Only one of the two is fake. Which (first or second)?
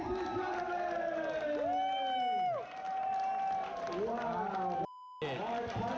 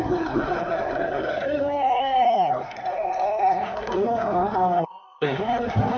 second